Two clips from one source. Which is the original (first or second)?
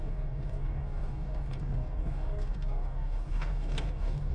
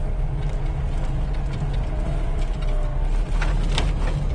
second